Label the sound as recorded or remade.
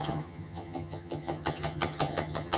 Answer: remade